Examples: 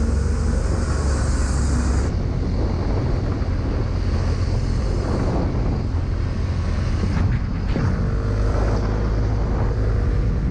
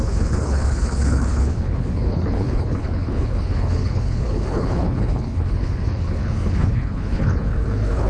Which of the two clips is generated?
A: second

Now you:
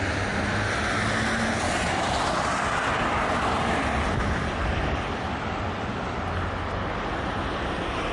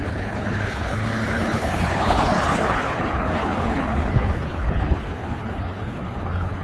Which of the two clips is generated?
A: second